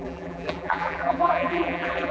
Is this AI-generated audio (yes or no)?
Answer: yes